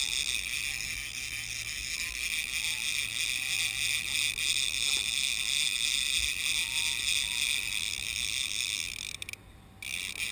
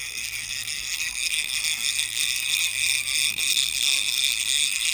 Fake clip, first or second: second